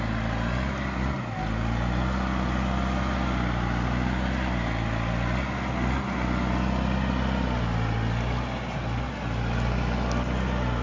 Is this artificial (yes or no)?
no